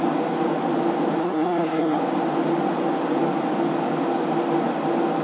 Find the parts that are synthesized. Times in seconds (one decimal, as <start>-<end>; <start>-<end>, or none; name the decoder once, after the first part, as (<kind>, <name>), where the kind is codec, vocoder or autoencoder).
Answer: 1.2-2.0 (codec, SNAC)